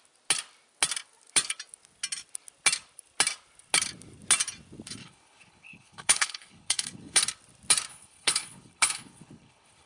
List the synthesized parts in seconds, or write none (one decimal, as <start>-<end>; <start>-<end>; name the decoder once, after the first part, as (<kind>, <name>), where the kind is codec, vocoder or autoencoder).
5.0-7.2 (codec, HILCodec); 7.9-9.9